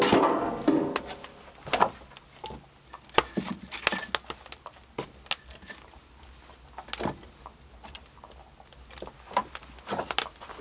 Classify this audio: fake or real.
real